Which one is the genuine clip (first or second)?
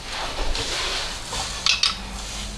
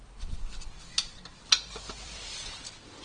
first